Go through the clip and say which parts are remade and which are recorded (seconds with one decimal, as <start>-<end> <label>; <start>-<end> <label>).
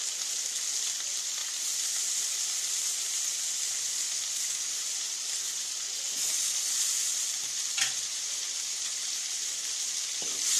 0.0-10.6 recorded